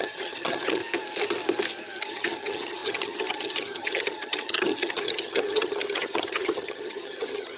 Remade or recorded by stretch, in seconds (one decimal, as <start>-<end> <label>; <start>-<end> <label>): 0.0-0.8 remade; 0.8-2.0 recorded; 2.0-7.6 remade